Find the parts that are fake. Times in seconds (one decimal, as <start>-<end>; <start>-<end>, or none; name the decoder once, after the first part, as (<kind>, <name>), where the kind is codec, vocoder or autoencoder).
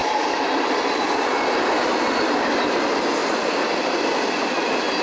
none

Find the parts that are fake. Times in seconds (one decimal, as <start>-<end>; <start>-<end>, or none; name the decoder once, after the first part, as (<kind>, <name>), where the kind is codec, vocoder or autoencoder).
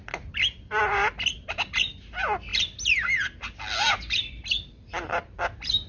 none